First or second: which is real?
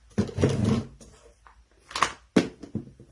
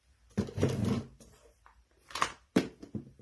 first